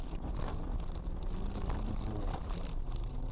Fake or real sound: fake